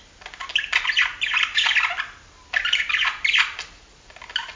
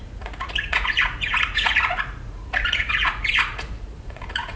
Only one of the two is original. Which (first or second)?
first